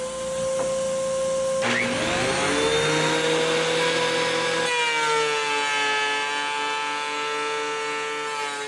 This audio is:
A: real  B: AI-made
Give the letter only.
A